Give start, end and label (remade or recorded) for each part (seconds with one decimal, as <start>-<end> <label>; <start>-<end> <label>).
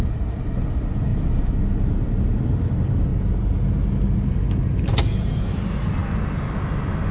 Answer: 0.0-3.1 remade; 3.1-5.3 recorded; 5.3-6.0 remade; 6.0-7.1 recorded